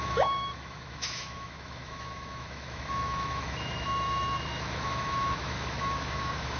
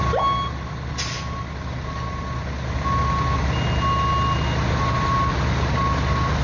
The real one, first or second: second